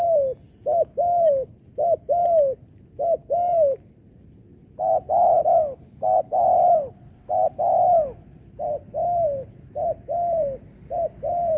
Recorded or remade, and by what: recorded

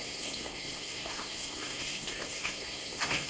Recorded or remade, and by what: remade, codec, SNAC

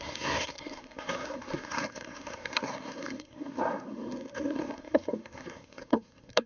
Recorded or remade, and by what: remade, codec, SNAC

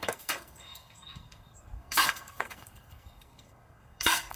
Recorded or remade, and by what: remade, codec, SNAC